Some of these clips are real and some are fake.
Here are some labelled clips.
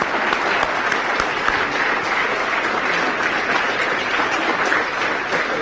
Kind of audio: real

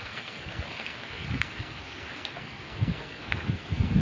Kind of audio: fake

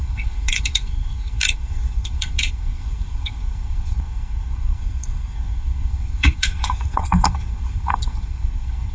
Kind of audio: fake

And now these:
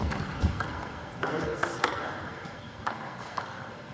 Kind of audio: fake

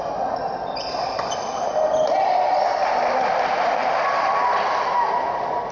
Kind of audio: real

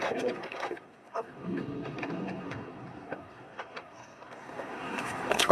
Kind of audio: fake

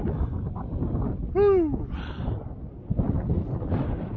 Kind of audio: real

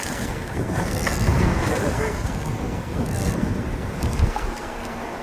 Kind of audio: fake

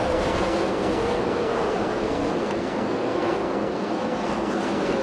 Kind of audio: fake